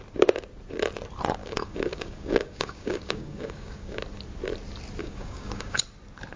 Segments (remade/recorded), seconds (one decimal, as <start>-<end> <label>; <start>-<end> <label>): 0.0-1.4 recorded; 1.4-4.0 remade; 4.0-5.0 recorded; 5.0-5.8 remade; 5.8-6.4 recorded